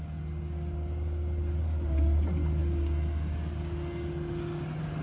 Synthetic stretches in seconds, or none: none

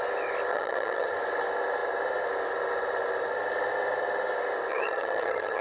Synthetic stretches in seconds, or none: 0.5-1.1 (vocoder, HiFi-GAN); 4.7-5.6